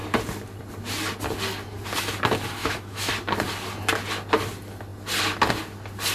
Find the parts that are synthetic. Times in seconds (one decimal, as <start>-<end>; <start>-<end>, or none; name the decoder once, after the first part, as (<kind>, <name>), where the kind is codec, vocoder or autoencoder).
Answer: 2.6-3.1 (autoencoder, DAC-VAE)